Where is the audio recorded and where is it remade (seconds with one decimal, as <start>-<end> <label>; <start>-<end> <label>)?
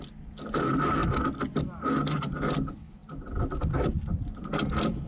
0.0-5.1 recorded